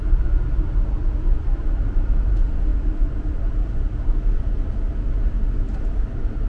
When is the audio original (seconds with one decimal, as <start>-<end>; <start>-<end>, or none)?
0.0-6.5